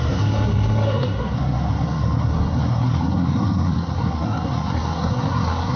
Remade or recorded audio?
remade